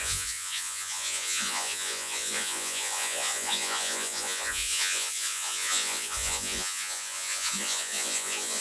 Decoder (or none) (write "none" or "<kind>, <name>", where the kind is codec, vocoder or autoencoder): vocoder, Vocos